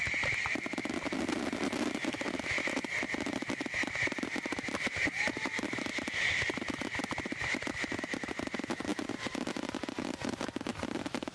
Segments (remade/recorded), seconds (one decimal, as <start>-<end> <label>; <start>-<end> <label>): 0.0-11.3 recorded